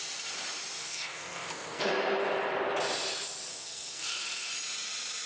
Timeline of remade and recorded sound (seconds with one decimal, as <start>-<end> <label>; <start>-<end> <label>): 0.0-0.8 recorded; 0.8-1.9 remade; 1.9-3.5 recorded; 3.5-4.5 remade; 4.5-5.3 recorded